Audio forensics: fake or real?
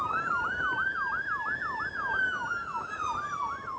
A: real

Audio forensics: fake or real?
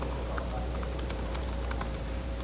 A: fake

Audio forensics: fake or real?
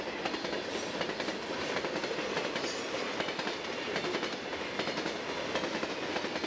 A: real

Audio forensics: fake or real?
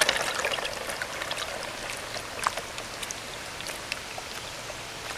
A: real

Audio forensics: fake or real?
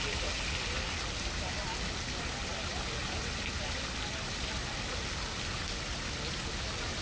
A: real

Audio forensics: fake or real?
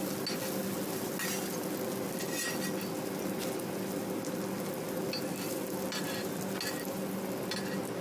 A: real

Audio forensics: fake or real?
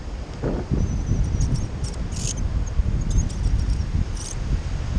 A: real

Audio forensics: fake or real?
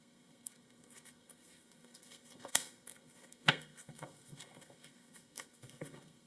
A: fake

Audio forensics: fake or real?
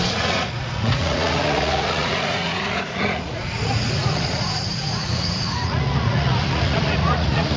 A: fake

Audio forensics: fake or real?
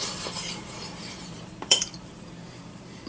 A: fake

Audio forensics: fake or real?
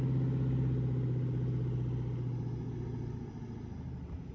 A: real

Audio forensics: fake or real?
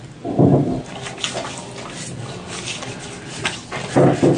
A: real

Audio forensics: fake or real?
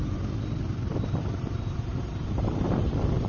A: fake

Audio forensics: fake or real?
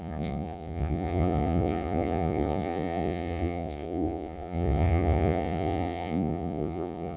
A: fake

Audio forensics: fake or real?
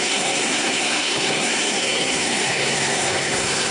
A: fake